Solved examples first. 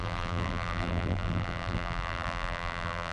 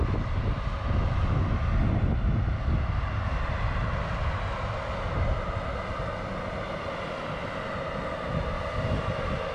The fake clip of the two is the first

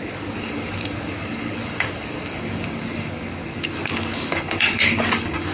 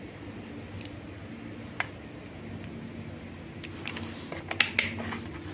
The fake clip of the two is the first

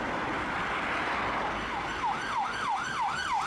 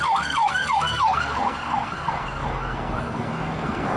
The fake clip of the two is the second